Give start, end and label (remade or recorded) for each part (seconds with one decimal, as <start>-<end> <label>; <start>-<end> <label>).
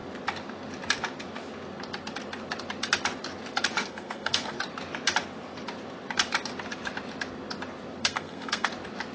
0.0-3.8 recorded; 3.8-4.6 remade; 4.6-8.0 recorded; 8.0-8.7 remade; 8.7-9.1 recorded